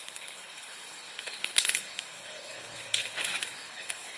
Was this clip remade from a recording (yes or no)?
yes